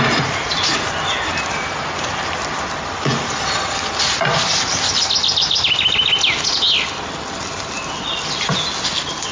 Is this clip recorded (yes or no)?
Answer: yes